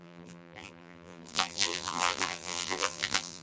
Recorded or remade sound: remade